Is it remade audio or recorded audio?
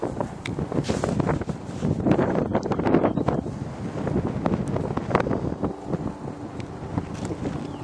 recorded